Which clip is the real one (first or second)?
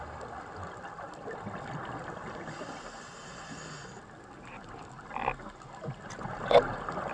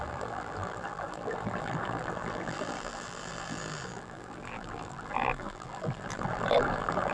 first